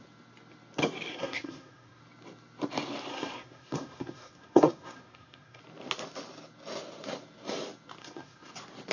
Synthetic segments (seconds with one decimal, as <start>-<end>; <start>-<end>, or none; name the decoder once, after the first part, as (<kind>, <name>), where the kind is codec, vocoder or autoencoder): 1.1-2.0 (codec, SNAC); 3.1-5.6; 8.0-8.5